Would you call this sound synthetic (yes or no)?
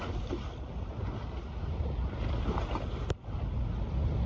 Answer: no